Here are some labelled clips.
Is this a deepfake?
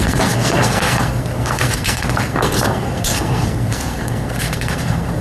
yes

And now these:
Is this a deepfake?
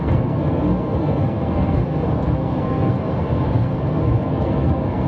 yes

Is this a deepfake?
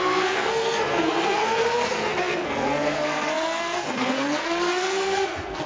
yes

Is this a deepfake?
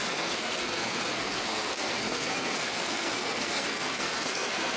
yes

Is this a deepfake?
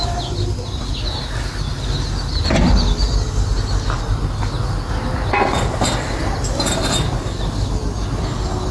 no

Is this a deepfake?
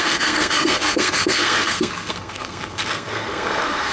yes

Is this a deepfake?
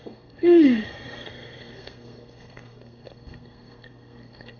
yes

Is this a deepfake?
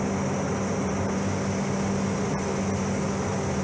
no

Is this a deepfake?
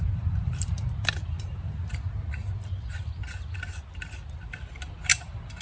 no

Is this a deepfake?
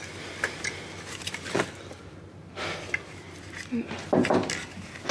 no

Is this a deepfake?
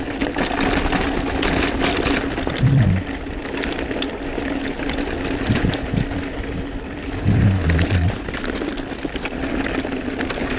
no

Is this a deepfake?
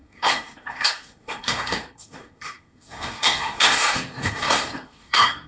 yes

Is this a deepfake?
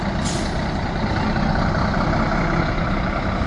no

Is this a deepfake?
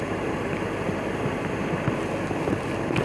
no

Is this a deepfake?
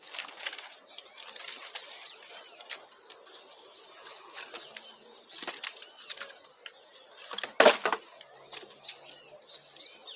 no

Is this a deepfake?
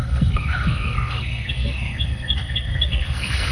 yes